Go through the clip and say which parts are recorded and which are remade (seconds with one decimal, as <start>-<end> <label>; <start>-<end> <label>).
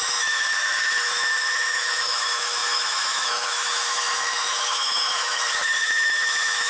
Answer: 0.0-6.7 remade